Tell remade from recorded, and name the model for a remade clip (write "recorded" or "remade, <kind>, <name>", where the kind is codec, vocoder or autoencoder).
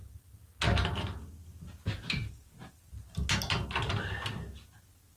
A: recorded